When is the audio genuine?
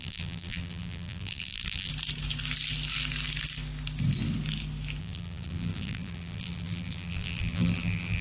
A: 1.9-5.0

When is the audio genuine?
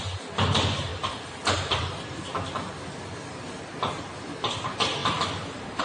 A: 0.0-0.9; 2.2-5.8